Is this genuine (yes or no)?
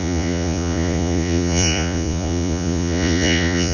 no